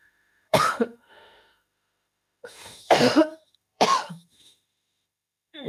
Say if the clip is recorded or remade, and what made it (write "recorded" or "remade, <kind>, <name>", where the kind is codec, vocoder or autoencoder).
remade, autoencoder, DAC-VAE